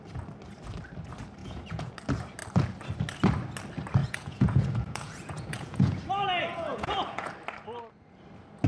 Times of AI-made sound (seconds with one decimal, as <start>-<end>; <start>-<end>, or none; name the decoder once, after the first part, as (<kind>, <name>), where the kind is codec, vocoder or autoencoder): 1.4-1.9 (vocoder, Vocos); 4.0-6.0; 6.5-7.3